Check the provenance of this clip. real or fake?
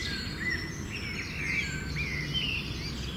real